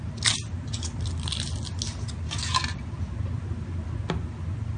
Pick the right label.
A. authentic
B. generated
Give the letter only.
A